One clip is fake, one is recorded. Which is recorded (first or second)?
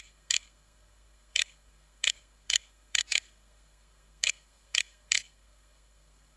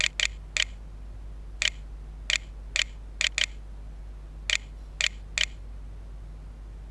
second